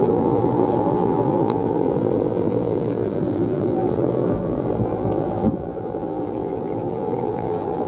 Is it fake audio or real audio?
fake